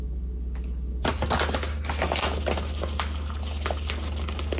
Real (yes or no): yes